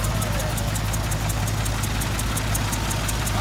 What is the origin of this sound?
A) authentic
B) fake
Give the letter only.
A